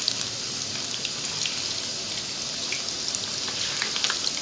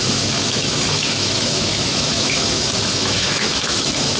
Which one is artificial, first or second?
second